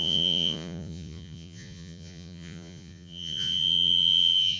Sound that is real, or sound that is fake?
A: fake